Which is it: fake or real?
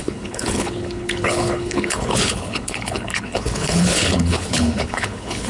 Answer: fake